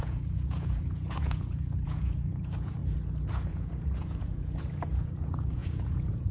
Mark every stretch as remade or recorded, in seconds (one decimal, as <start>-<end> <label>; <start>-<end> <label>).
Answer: 0.0-2.8 remade; 2.8-3.3 recorded; 3.3-6.3 remade